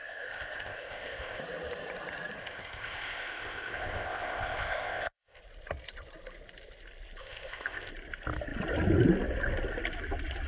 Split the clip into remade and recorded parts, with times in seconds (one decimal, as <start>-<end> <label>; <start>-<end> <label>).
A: 0.0-1.4 remade; 1.4-2.4 recorded; 2.4-5.4 remade; 5.4-7.2 recorded; 7.2-7.9 remade; 7.9-10.5 recorded

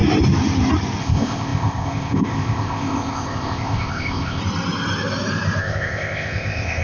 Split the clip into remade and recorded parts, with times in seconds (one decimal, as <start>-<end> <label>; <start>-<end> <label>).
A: 0.0-1.0 recorded; 1.0-4.4 remade; 4.4-5.6 recorded; 5.6-6.8 remade

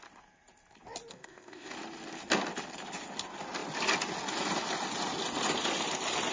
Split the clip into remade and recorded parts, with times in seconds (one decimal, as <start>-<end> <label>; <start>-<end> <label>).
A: 0.0-1.1 recorded; 1.1-1.7 remade; 1.7-6.3 recorded